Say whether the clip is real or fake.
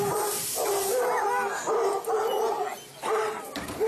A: real